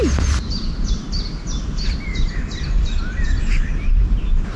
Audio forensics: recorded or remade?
recorded